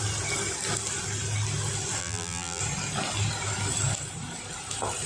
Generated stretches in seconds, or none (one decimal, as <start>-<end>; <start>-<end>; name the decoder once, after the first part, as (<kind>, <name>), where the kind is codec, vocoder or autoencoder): 2.0-2.6 (vocoder, BigVGAN v2)